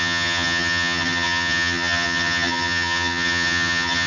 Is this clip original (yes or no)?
no